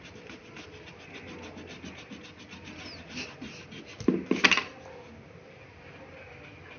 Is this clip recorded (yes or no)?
yes